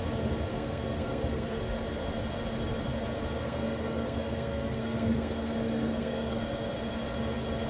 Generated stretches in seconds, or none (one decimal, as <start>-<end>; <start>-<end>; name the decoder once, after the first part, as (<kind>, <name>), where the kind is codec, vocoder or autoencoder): 0.5-1.6 (codec, SNAC); 3.4-6.7